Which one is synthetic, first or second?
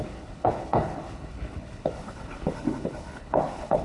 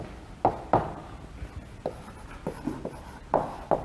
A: first